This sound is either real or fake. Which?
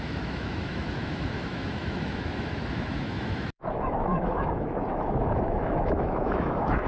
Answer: fake